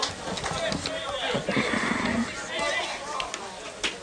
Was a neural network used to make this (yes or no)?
no